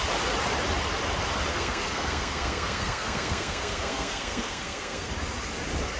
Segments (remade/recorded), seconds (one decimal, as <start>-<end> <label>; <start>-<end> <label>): 0.0-1.5 recorded; 1.5-5.1 remade; 5.1-6.0 recorded